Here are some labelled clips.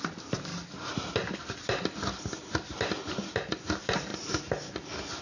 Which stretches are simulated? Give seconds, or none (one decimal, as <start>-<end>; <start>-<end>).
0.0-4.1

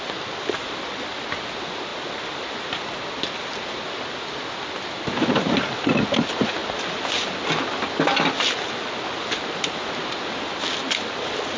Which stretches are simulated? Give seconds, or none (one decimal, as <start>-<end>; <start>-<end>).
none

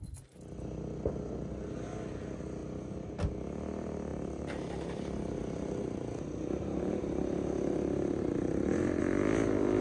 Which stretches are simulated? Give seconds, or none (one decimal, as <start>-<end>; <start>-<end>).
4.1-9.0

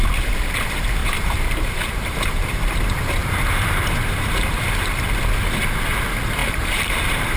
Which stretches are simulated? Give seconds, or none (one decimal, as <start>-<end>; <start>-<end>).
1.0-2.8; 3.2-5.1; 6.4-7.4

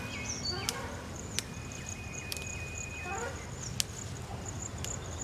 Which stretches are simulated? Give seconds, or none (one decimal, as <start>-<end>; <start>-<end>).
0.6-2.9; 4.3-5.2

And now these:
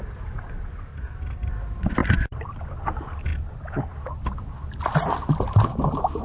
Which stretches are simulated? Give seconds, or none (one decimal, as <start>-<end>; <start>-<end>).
0.9-1.5; 2.0-2.5

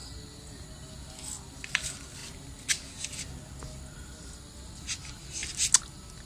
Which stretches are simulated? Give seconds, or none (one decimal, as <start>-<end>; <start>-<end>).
none

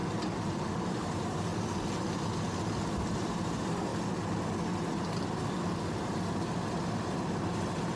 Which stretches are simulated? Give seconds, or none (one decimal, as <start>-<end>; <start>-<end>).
0.8-1.5; 2.9-3.9